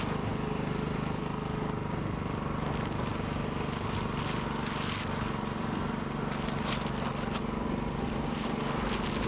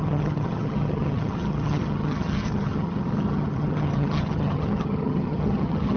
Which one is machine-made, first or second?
second